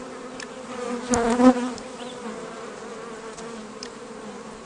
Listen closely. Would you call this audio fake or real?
real